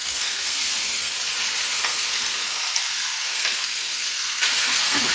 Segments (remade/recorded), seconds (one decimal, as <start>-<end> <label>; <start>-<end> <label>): 0.0-1.2 remade; 1.2-1.7 recorded; 1.7-5.1 remade